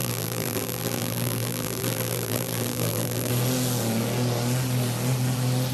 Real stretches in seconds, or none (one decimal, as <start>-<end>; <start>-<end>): 3.3-5.7